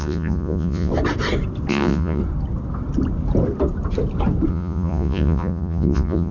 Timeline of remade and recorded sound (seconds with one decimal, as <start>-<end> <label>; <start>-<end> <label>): 0.0-0.9 remade; 0.9-1.7 recorded; 1.7-2.2 remade; 2.2-4.5 recorded; 4.5-6.3 remade